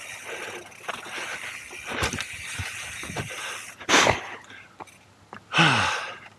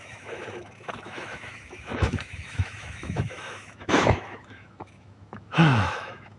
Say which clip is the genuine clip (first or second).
first